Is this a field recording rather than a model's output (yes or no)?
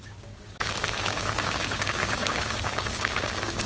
no